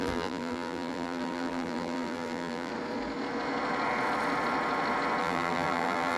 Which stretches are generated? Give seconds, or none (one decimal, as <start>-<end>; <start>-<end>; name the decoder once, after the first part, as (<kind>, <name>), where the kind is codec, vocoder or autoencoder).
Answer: 0.0-2.7 (vocoder, BigVGAN v2); 5.2-6.2